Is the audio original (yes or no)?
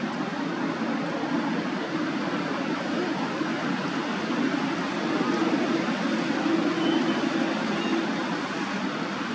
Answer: yes